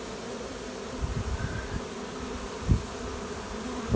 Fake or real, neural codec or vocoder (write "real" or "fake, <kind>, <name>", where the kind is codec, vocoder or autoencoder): fake, vocoder, BigVGAN v2